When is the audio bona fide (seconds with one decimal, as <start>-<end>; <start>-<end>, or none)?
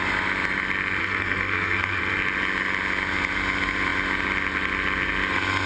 0.0-1.0; 2.0-5.7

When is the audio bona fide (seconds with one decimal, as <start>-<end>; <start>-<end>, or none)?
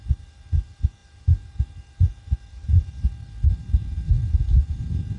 0.0-5.2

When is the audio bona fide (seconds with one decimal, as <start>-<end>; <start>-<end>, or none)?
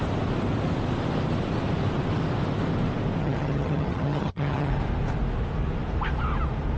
0.0-3.2; 4.7-6.8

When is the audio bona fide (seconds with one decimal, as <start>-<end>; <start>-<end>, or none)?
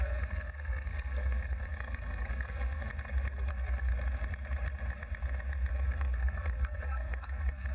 2.9-3.5; 3.9-5.7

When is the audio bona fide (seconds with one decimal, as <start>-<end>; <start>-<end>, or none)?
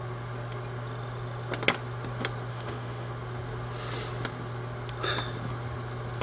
0.0-2.5; 3.1-6.2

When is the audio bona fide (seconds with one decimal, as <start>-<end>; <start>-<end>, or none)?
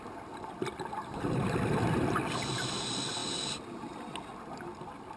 0.0-5.2